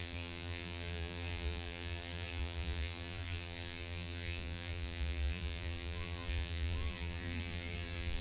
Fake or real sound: fake